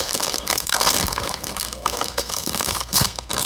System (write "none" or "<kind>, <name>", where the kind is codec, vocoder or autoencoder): codec, SNAC